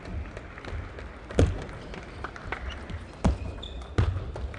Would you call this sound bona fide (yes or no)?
yes